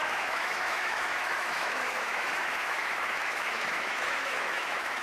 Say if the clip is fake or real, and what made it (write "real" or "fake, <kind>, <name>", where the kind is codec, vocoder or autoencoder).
fake, autoencoder, DAC-VAE